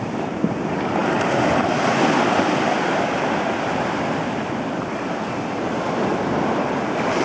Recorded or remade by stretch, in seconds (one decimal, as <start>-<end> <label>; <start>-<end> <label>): 0.0-7.2 recorded